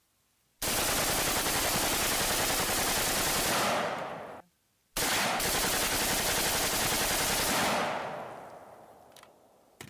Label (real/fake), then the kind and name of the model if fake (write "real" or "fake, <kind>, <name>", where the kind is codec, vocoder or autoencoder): real